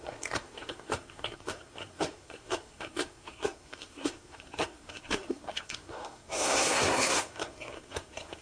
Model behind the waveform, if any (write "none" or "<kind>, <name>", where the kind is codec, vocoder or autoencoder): codec, SNAC